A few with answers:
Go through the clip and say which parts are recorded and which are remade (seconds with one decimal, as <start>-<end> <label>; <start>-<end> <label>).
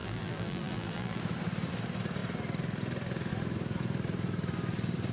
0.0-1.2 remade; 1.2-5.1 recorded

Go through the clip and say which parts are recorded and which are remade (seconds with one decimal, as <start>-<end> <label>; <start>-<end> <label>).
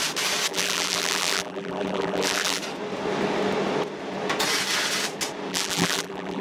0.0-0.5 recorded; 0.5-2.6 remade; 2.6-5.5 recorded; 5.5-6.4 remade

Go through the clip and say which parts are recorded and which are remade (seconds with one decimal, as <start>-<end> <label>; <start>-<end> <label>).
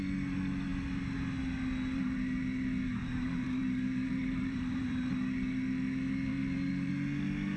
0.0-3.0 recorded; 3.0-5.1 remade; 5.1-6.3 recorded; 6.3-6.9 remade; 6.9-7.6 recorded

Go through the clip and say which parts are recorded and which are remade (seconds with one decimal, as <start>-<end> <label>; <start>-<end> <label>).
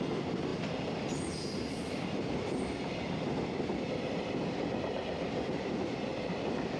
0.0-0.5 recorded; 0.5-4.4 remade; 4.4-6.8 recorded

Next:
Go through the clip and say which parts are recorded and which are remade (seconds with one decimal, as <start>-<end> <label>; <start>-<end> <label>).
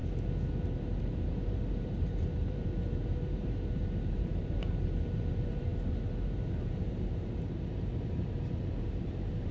0.0-0.7 recorded; 0.7-9.5 remade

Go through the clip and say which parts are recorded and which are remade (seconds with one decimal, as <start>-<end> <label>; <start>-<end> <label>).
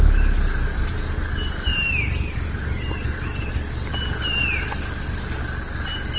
0.0-1.7 recorded; 1.7-5.4 remade; 5.4-6.2 recorded